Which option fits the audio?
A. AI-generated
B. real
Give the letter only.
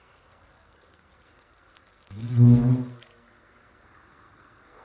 A